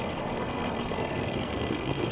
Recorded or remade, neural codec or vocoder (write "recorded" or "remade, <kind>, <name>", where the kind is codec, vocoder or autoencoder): remade, codec, SNAC